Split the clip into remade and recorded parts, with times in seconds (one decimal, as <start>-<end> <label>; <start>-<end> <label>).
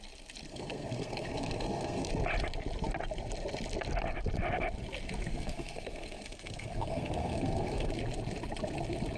0.0-0.5 recorded; 0.5-2.1 remade; 2.1-5.3 recorded; 5.3-7.9 remade; 7.9-9.2 recorded